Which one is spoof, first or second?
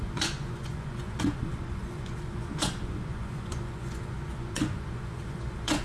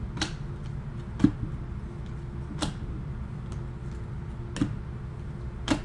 first